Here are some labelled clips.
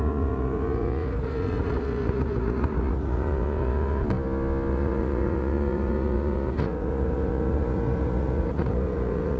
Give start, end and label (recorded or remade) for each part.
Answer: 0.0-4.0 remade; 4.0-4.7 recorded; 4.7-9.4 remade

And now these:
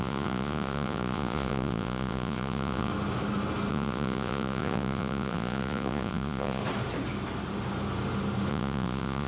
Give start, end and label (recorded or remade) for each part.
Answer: 0.0-2.9 remade; 2.9-3.7 recorded; 3.7-6.6 remade; 6.6-8.5 recorded; 8.5-9.3 remade

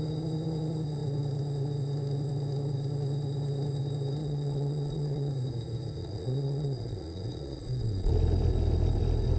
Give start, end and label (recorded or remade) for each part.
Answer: 0.0-4.2 recorded; 4.2-5.3 remade; 5.3-6.0 recorded; 6.0-8.1 remade; 8.1-9.4 recorded

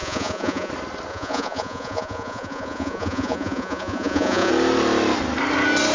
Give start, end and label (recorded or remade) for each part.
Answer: 0.0-0.7 remade; 0.7-1.1 recorded; 1.1-4.5 remade; 4.5-5.9 recorded

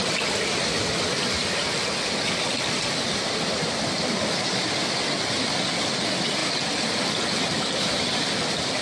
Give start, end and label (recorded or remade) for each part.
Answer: 0.0-8.8 recorded

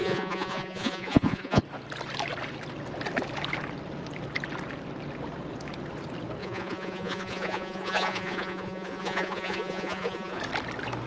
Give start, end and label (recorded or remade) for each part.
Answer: 0.0-1.6 remade; 1.6-6.4 recorded; 6.4-10.4 remade; 10.4-11.1 recorded